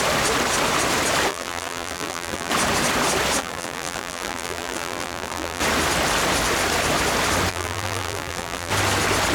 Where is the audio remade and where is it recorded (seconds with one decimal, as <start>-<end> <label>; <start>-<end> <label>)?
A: 0.0-1.3 recorded; 1.3-2.5 remade; 2.5-3.4 recorded; 3.4-5.6 remade; 5.6-7.5 recorded; 7.5-8.7 remade; 8.7-9.3 recorded